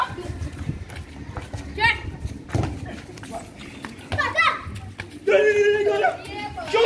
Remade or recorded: recorded